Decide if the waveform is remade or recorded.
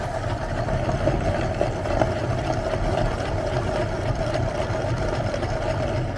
remade